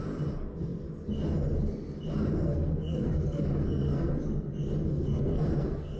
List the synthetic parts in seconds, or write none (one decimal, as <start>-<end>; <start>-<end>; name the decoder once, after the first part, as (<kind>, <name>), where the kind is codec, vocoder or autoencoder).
2.3-4.5 (codec, SNAC); 4.9-6.0